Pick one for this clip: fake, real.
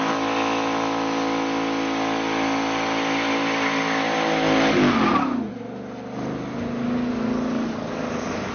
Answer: real